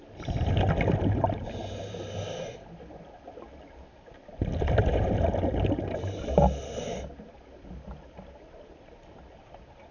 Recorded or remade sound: recorded